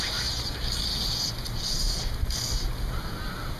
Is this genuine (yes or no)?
yes